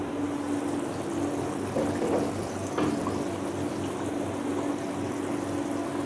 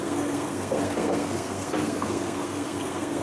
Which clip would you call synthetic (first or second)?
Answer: second